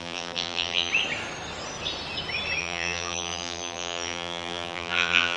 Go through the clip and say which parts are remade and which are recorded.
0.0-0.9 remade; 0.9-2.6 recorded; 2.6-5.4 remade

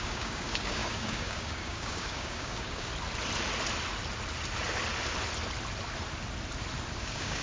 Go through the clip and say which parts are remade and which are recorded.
0.0-2.9 remade; 2.9-7.0 recorded; 7.0-7.4 remade

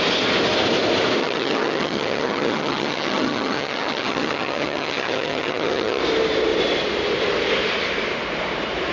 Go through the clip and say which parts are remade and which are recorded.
0.0-1.2 recorded; 1.2-6.0 remade; 6.0-8.9 recorded

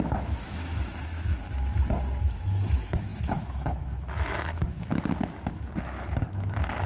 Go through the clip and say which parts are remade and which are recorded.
0.0-1.3 remade; 1.3-2.2 recorded; 2.2-6.9 remade

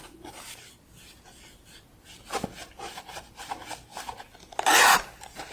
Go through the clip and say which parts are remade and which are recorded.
0.0-5.5 recorded

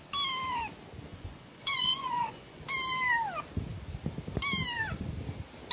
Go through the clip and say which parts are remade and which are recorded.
0.0-1.1 recorded; 1.1-2.6 remade; 2.6-5.7 recorded

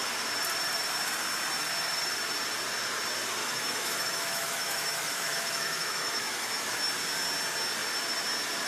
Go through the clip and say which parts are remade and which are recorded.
0.0-3.4 recorded; 3.4-6.9 remade; 6.9-8.7 recorded

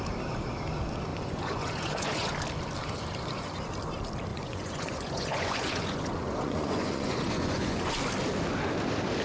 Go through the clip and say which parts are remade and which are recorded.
0.0-1.1 recorded; 1.1-2.3 remade; 2.3-4.3 recorded; 4.3-7.9 remade; 7.9-9.2 recorded